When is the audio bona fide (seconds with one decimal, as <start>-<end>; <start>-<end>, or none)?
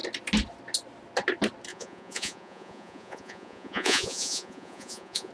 0.0-1.7